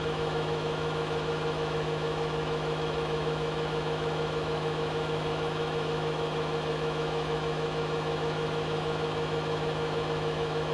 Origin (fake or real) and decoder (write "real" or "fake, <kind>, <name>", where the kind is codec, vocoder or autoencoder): fake, autoencoder, DAC-VAE